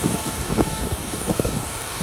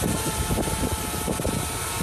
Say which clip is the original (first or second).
second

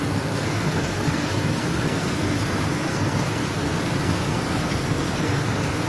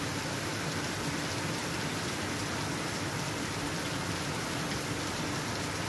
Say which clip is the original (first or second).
second